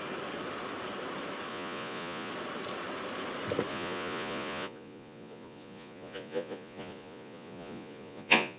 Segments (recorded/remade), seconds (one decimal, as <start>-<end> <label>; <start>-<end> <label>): 0.0-1.5 recorded; 1.5-2.3 remade; 2.3-3.7 recorded; 3.7-8.6 remade